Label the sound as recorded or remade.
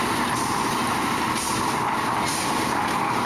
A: recorded